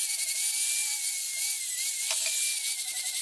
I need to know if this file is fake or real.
real